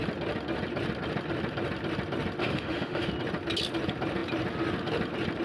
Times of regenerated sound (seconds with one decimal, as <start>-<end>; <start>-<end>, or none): 2.4-3.1